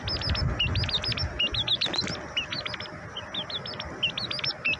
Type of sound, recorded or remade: recorded